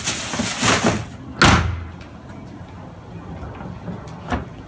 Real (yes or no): yes